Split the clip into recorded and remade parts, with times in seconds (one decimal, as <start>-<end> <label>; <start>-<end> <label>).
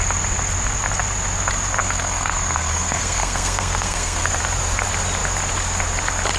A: 0.0-1.8 recorded; 1.8-4.4 remade; 4.4-6.4 recorded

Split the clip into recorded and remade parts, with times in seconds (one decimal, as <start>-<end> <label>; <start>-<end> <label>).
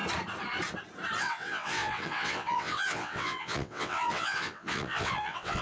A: 0.0-1.2 recorded; 1.2-5.6 remade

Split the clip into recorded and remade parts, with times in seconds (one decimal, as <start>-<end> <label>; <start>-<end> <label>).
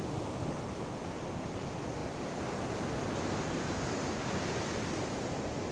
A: 0.0-5.7 recorded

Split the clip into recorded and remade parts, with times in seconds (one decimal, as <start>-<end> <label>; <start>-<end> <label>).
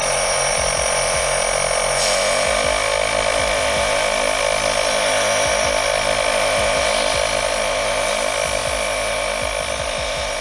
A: 0.0-10.4 recorded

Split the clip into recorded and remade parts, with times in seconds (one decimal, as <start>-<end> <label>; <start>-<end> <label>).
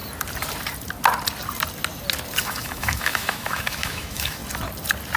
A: 0.0-2.4 recorded; 2.4-4.4 remade; 4.4-5.2 recorded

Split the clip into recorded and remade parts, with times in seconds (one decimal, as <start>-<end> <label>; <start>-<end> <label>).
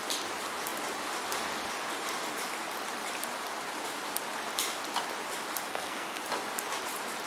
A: 0.0-5.7 recorded; 5.7-6.2 remade; 6.2-7.3 recorded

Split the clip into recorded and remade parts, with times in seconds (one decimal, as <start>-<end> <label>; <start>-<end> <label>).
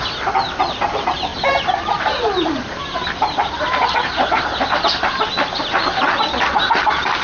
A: 0.0-1.3 recorded; 1.3-4.8 remade; 4.8-7.2 recorded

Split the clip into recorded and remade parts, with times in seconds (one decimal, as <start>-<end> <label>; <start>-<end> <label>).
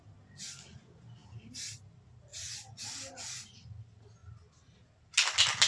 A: 0.0-5.7 recorded